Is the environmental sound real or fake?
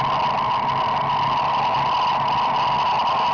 real